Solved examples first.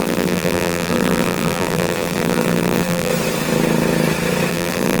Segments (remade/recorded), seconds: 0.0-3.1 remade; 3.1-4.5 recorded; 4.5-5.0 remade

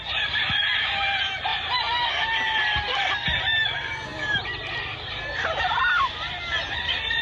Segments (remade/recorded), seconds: 0.0-7.2 recorded

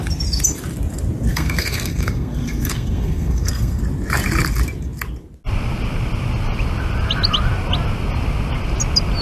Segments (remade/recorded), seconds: 0.0-1.3 recorded; 1.3-3.8 remade; 3.8-9.2 recorded

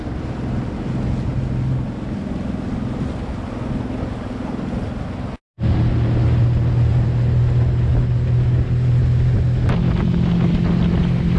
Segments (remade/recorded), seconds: 0.0-11.4 recorded

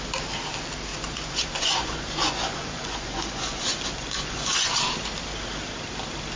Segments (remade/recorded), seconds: 0.0-0.9 recorded; 0.9-4.7 remade; 4.7-6.4 recorded